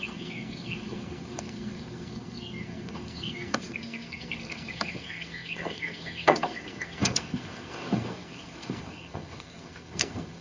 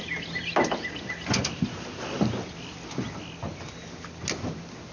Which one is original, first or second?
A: second